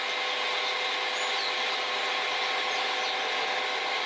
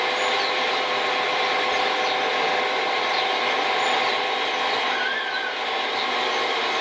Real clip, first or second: first